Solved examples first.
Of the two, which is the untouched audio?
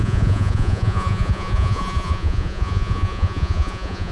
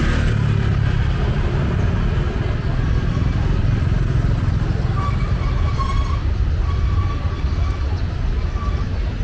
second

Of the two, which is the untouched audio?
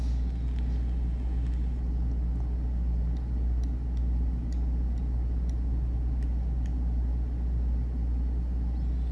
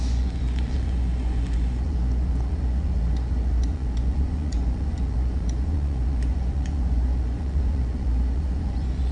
first